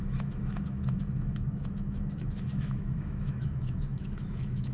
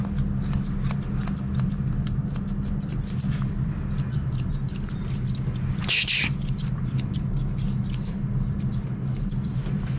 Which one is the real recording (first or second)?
second